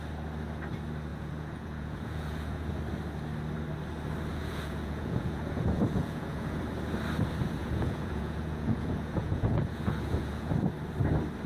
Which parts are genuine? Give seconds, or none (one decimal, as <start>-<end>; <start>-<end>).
0.0-1.1; 2.7-4.3; 6.6-7.6; 10.5-11.5